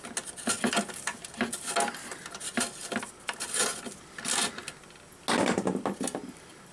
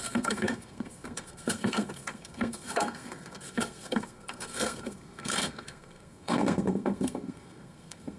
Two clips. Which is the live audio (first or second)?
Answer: first